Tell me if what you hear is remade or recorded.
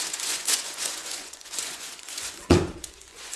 remade